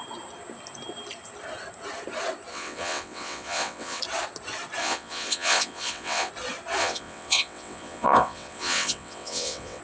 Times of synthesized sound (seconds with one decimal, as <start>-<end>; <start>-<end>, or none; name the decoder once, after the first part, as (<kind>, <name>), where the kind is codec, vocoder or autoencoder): 2.5-4.0 (vocoder, WaveNeXt); 4.8-6.3; 6.8-9.8